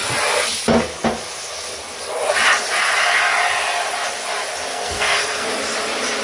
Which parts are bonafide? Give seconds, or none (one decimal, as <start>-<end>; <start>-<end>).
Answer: 0.0-4.7; 5.5-6.2